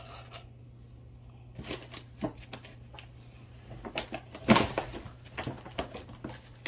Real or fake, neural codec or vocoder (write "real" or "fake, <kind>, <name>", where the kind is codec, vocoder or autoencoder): real